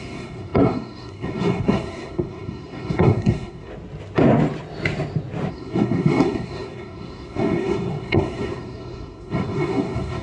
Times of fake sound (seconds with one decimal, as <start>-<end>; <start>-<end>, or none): 0.0-3.7; 5.5-10.2